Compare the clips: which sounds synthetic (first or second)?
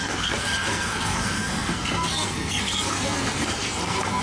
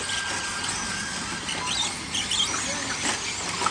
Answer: first